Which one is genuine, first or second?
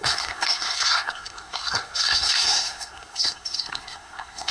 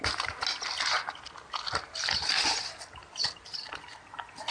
second